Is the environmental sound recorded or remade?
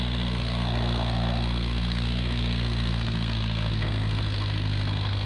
remade